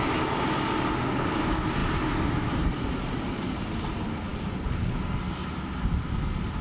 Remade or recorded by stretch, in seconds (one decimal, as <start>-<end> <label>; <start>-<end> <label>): 0.0-6.6 recorded